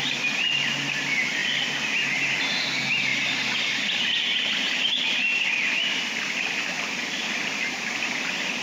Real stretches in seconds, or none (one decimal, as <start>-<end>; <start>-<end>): 0.0-8.6